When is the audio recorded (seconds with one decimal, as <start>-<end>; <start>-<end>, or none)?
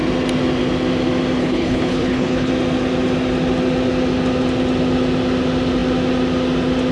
0.0-1.4; 2.5-6.9